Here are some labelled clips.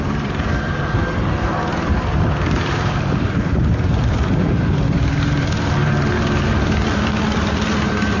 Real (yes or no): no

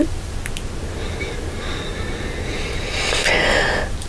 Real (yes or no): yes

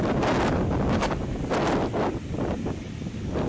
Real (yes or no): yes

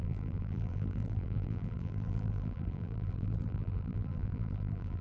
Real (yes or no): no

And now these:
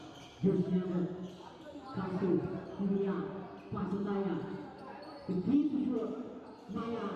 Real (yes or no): yes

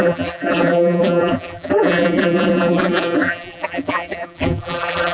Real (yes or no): no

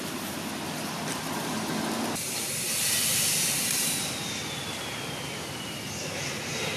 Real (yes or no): no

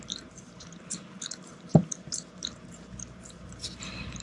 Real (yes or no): no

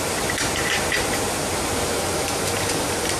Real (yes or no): no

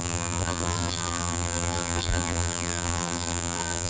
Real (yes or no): no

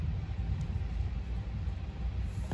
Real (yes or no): no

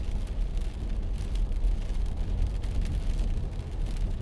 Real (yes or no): yes